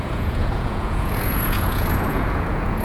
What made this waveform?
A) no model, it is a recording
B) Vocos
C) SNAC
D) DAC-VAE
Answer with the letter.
B